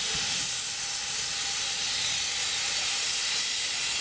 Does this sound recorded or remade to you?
recorded